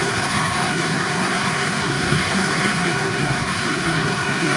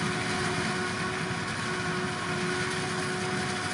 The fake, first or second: first